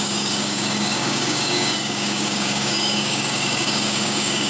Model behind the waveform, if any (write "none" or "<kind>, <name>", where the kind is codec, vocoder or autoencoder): codec, DAC